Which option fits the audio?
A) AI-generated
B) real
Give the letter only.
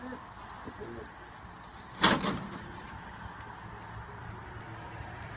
B